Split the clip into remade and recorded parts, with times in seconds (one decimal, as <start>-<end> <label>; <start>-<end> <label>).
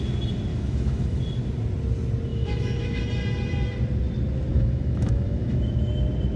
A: 0.0-0.5 recorded; 0.5-1.2 remade; 1.2-2.3 recorded; 2.3-3.0 remade; 3.0-4.5 recorded; 4.5-5.9 remade; 5.9-6.4 recorded